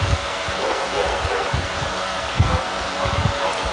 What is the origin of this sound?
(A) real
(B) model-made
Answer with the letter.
B